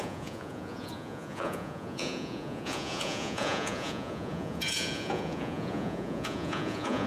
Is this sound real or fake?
fake